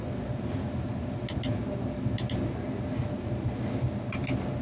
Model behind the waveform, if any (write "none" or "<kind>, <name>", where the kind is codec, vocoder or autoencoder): none